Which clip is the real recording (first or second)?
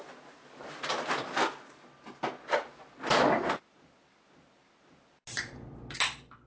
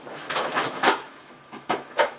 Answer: first